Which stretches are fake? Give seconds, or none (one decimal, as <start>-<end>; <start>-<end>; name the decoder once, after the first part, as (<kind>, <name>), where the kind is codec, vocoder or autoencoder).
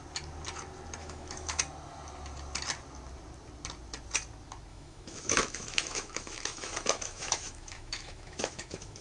1.0-1.6 (autoencoder, DAC-VAE); 4.7-9.0